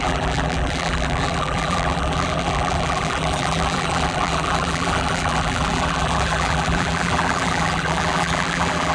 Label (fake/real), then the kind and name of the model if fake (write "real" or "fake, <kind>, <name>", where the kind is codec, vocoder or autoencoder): fake, vocoder, BigVGAN v2